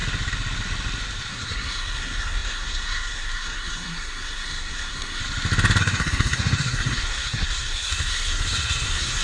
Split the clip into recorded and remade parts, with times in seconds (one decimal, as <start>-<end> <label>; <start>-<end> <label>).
0.0-1.3 recorded; 1.3-5.2 remade; 5.2-5.8 recorded; 5.8-9.2 remade